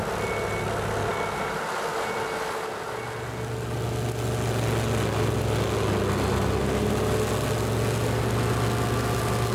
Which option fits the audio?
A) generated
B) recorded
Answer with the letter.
B